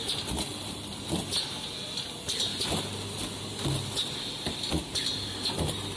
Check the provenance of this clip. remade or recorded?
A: recorded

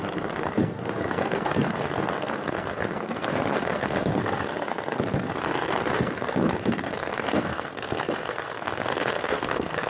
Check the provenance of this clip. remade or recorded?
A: remade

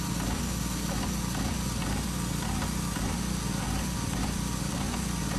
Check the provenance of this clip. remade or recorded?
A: recorded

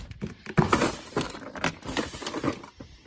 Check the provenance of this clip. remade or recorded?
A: recorded